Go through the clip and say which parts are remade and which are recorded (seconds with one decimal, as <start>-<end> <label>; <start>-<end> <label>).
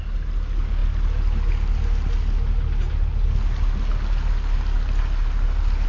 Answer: 0.0-5.9 recorded